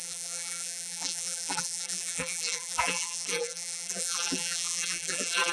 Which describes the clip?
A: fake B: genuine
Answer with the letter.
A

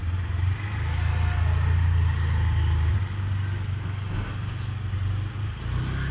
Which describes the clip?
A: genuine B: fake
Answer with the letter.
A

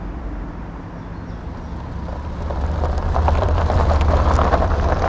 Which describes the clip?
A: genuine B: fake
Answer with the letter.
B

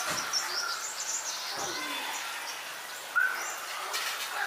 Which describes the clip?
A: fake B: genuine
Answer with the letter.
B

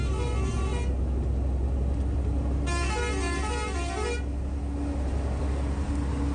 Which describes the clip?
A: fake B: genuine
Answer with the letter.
B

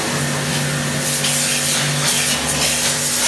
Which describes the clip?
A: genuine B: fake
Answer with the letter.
A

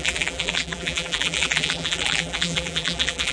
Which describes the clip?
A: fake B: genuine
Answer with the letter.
A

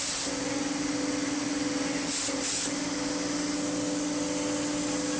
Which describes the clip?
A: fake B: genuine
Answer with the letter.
B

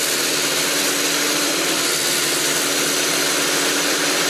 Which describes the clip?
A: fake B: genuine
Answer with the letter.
B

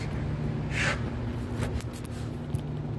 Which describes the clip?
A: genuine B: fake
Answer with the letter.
A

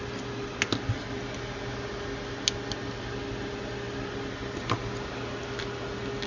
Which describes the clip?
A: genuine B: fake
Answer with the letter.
A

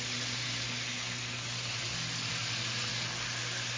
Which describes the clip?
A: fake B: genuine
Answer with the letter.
B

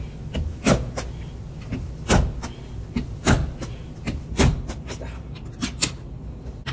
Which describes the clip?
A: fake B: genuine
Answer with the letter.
B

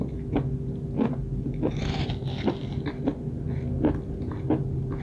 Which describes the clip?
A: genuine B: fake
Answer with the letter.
A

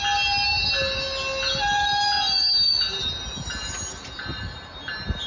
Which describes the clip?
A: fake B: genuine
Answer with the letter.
B